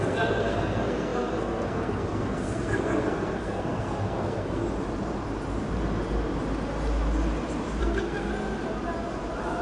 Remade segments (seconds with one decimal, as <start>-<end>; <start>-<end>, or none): 0.0-4.6; 7.8-8.3